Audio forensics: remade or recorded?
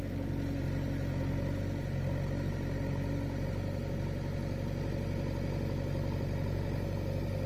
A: recorded